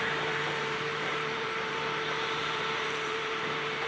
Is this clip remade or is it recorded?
remade